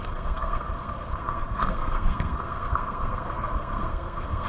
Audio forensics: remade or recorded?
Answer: remade